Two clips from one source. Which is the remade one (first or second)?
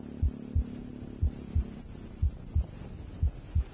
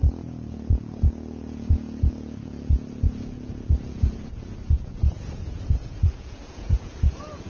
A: second